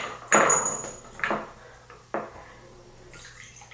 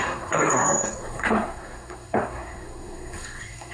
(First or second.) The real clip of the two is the first